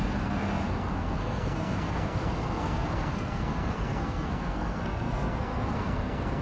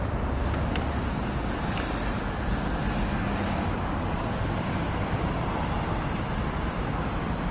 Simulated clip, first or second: first